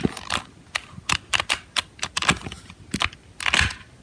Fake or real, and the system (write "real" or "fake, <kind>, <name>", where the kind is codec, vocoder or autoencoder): real